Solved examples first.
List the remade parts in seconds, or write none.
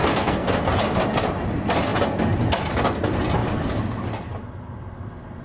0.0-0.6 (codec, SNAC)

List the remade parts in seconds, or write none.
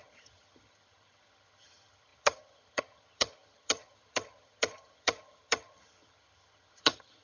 0.0-7.2 (vocoder, HiFi-GAN)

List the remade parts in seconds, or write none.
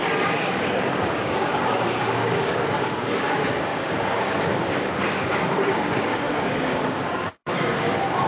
0.0-8.3 (codec, DAC)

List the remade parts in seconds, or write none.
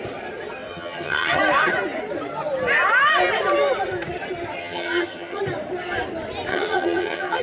0.7-1.4 (vocoder, HiFi-GAN); 4.6-5.4; 6.5-7.4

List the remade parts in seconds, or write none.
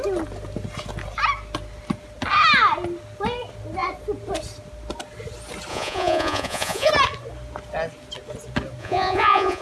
5.7-6.9 (vocoder, Vocos); 8.8-9.6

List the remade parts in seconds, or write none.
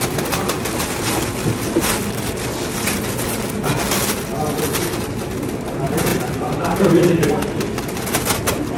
none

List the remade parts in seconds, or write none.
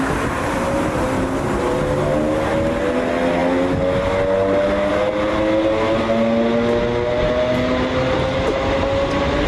none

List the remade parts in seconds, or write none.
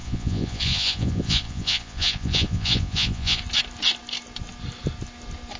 0.0-3.4 (vocoder, Vocos)